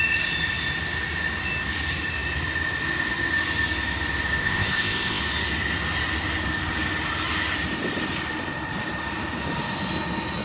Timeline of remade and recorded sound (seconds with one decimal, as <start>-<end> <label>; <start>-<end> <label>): 0.0-4.4 recorded; 4.4-5.2 remade; 5.2-10.4 recorded